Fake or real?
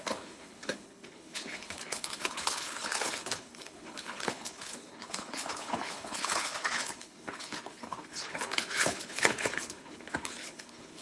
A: fake